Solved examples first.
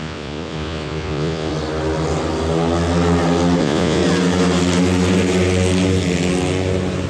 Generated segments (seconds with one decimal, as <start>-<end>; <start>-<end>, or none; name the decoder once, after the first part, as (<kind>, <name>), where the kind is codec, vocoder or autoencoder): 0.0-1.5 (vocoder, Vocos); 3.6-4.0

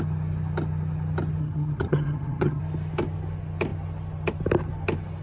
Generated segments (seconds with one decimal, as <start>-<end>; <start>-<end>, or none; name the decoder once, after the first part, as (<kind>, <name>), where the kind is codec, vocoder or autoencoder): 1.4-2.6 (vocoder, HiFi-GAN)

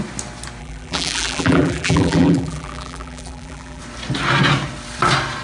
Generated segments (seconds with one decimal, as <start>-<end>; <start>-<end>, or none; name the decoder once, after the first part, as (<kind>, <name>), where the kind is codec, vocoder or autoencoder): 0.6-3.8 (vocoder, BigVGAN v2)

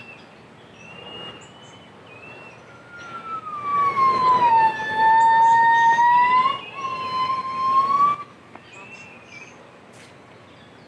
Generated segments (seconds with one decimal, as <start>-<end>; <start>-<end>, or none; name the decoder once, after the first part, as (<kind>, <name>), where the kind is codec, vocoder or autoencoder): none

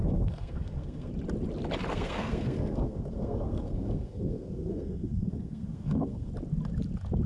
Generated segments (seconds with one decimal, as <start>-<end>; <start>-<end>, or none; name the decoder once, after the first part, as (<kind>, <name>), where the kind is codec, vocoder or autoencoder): 0.0-1.1 (codec, SNAC); 1.9-6.3

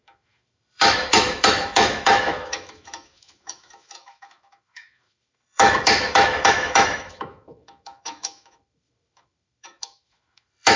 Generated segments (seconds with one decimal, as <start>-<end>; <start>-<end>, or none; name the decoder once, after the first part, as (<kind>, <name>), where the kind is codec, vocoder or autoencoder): 0.0-10.8 (autoencoder, DAC-VAE)